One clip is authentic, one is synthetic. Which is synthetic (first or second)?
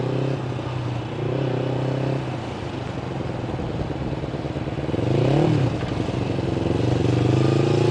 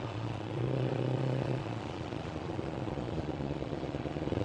second